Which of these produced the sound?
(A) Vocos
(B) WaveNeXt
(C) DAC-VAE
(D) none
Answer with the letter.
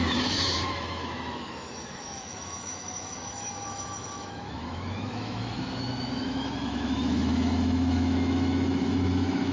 C